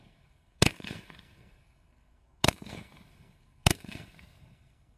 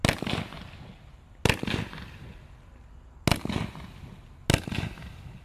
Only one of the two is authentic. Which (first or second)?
second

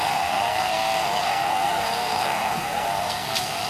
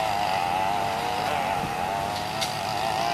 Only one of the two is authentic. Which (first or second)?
second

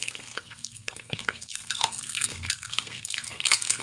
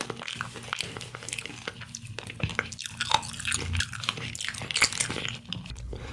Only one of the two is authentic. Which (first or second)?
second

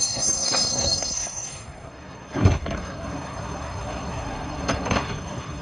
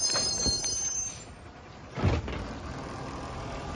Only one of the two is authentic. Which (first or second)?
second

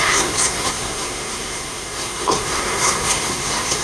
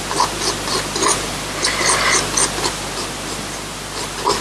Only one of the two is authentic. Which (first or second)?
second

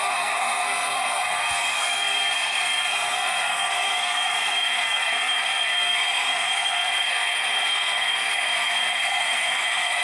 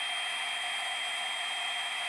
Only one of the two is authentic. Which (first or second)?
second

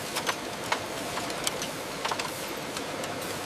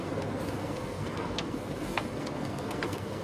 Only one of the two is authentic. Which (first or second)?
first